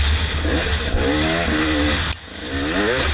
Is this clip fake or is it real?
real